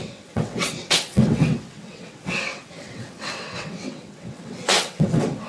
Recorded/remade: remade